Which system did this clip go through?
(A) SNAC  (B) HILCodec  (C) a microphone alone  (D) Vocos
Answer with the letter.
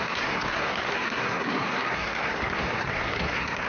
A